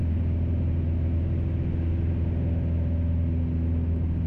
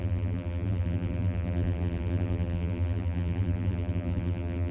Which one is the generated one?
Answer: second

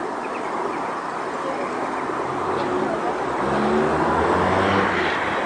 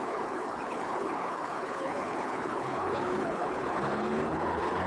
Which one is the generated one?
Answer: second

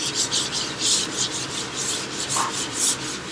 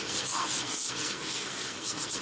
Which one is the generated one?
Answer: second